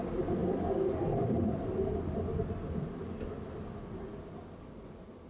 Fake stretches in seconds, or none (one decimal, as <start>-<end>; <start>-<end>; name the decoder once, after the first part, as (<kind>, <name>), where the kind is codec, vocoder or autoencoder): none